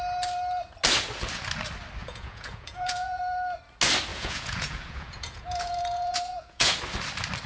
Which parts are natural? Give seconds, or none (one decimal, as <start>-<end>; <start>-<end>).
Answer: 0.0-2.0; 3.2-4.1; 6.7-7.5